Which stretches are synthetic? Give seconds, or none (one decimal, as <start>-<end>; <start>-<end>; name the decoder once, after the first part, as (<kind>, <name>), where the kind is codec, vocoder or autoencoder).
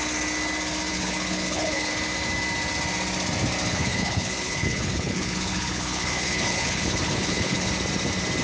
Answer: 0.9-1.9 (codec, HILCodec); 3.7-7.7